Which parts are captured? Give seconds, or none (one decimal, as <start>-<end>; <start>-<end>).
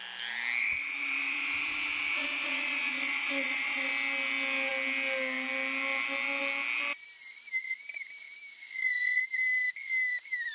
0.0-0.6; 3.9-8.6; 9.2-10.5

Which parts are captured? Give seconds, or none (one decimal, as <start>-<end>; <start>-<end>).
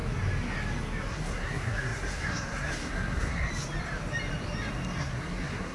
0.0-1.1; 3.5-5.0